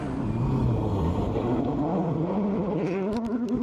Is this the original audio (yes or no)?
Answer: yes